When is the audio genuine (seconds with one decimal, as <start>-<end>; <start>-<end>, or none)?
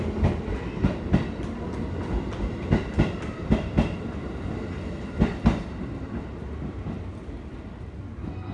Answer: 0.0-8.5